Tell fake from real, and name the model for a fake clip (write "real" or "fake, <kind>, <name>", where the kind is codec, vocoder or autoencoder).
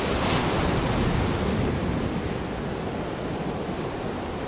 real